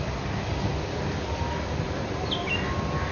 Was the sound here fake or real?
real